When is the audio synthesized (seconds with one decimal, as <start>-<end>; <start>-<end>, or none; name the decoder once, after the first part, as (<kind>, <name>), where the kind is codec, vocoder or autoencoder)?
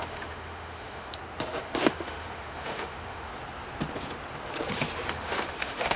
0.0-1.1 (autoencoder, DAC-VAE); 1.6-3.3; 5.1-6.0